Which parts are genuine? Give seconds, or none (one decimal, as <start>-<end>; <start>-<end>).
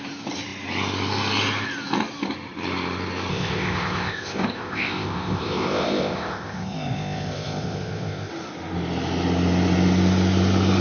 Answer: 0.0-3.3; 8.3-10.8